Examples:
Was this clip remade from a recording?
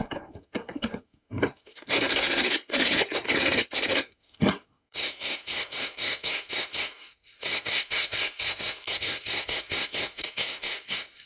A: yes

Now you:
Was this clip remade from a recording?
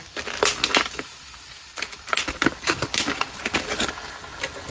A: no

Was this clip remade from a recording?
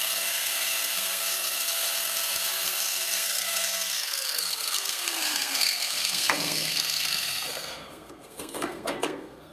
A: yes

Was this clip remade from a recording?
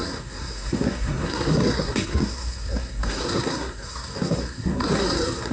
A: yes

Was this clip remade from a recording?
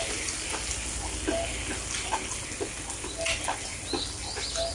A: no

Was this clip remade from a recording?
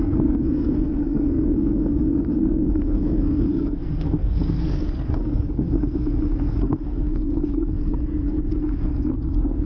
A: yes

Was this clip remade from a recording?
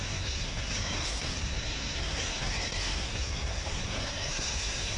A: yes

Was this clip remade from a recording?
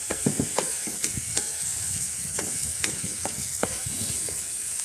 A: yes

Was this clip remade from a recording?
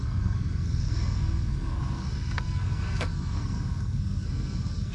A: yes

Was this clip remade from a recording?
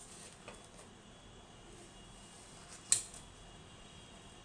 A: no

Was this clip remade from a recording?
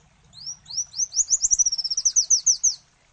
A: no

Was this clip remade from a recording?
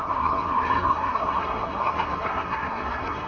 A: yes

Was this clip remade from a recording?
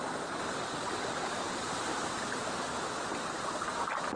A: no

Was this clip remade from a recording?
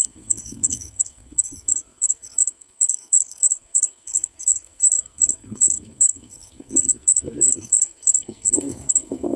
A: yes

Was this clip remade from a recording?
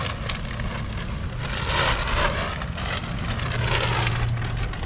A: no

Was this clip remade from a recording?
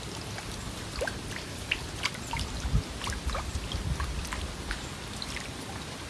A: no